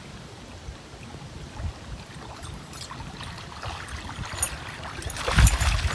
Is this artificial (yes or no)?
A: no